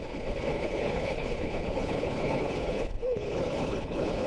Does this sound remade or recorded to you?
remade